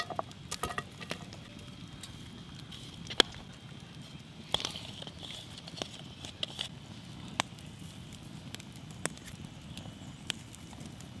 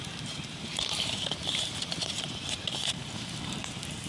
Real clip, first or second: first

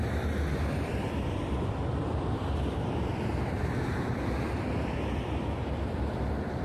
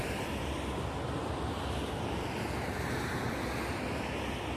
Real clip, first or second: second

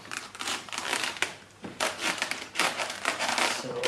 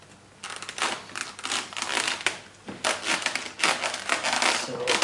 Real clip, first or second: second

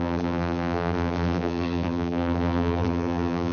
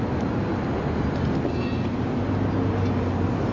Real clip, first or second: second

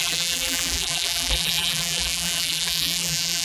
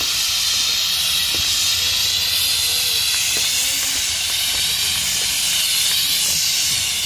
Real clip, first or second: second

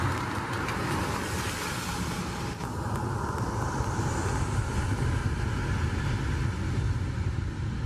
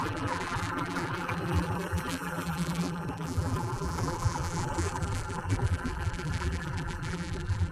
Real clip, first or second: first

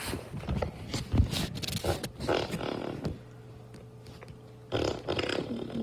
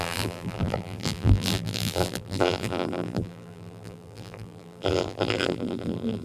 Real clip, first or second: first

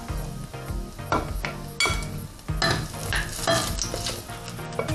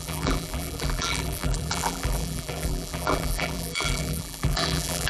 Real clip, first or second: first